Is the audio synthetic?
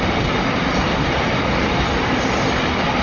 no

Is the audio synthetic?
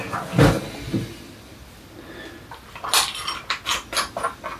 no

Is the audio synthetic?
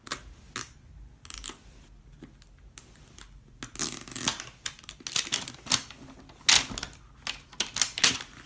no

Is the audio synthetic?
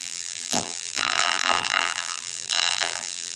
yes